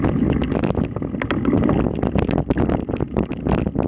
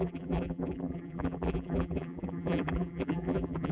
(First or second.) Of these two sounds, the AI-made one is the second